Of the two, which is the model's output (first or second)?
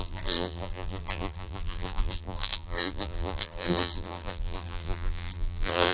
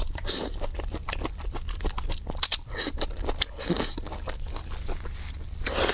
first